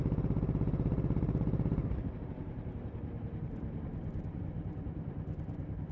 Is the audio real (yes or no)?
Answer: no